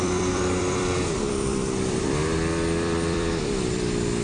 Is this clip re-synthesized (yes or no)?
yes